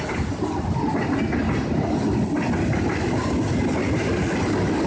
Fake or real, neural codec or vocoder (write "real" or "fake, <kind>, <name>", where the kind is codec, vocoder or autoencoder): real